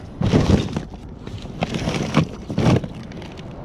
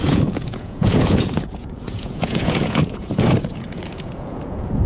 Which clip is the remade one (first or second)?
second